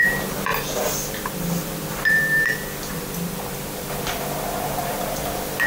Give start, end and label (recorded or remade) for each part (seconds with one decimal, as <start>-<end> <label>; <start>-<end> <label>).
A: 0.0-5.7 remade